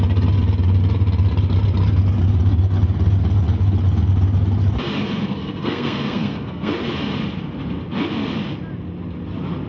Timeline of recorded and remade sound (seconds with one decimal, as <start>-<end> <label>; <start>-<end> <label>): 0.0-5.0 recorded; 5.0-6.7 remade; 6.7-9.7 recorded